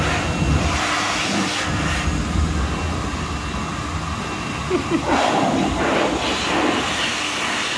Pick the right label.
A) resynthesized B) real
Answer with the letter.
B